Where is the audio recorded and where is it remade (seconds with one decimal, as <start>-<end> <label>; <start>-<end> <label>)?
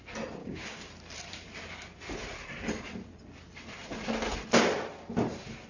0.0-0.4 recorded; 0.4-0.9 remade; 0.9-5.7 recorded